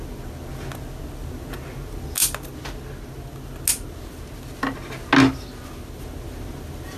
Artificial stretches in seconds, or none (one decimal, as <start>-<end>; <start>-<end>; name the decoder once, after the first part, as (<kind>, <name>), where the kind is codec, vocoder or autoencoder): none